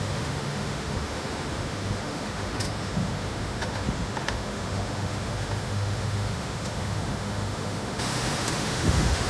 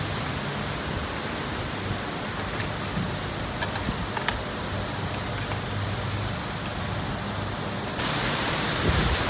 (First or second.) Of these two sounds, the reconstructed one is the first